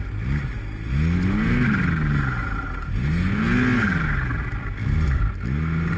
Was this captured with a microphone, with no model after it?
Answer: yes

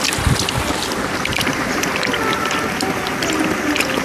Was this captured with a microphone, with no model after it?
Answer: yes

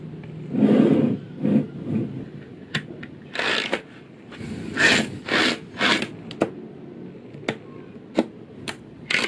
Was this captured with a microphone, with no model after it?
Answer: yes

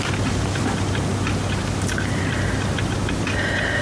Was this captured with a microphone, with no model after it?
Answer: no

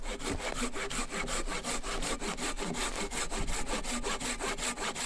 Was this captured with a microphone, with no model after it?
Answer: yes